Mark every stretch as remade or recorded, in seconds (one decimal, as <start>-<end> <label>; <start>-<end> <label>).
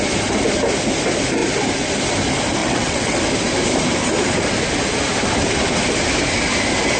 0.0-2.6 recorded; 2.6-3.2 remade; 3.2-7.0 recorded